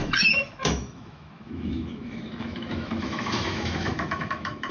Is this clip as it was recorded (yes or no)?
no